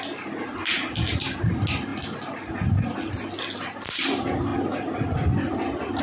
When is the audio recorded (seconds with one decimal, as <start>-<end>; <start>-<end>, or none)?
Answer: 0.0-6.0